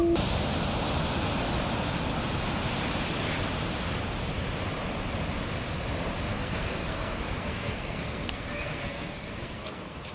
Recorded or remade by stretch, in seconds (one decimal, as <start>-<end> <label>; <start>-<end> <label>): 0.0-6.3 recorded; 6.3-10.1 remade